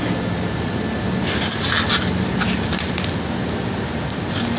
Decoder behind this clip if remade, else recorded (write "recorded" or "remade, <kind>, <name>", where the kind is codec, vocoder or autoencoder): recorded